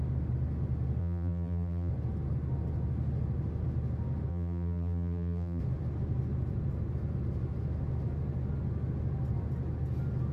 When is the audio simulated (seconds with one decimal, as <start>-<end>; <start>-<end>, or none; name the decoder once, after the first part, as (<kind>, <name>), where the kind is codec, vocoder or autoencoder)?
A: 1.0-1.9 (vocoder, BigVGAN v2); 4.3-5.6